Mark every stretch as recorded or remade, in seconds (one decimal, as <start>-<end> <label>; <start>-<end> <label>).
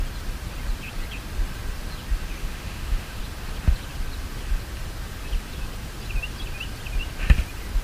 0.0-2.4 recorded; 2.4-3.2 remade; 3.2-7.8 recorded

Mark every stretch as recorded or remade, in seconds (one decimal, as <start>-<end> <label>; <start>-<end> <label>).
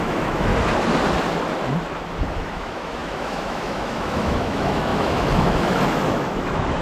0.0-0.5 remade; 0.5-2.3 recorded; 2.3-6.8 remade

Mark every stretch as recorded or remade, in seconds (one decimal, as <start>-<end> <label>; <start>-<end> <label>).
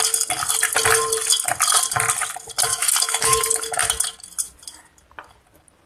0.0-2.7 recorded; 2.7-3.4 remade; 3.4-5.9 recorded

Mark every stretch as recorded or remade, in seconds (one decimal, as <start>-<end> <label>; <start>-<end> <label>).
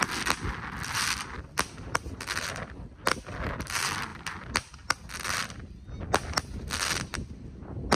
0.0-8.0 recorded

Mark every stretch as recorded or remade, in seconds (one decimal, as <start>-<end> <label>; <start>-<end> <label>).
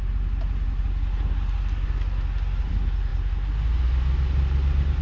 0.0-5.0 recorded